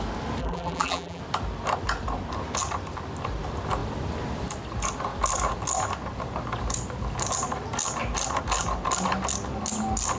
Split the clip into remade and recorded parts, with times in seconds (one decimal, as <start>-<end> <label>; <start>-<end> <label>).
0.0-0.4 recorded; 0.4-1.2 remade; 1.2-10.2 recorded